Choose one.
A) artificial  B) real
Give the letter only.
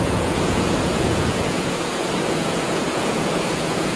A